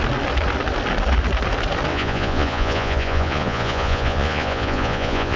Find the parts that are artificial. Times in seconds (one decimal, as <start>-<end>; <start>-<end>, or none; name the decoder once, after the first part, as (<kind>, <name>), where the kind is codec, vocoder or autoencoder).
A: 1.9-5.4 (vocoder, Vocos)